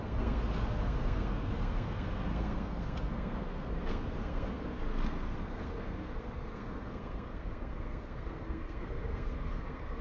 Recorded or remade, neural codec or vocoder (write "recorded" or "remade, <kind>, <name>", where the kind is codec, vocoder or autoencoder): remade, codec, SNAC